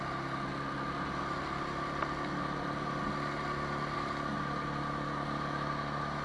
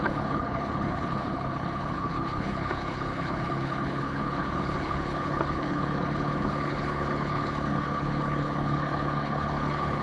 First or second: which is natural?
first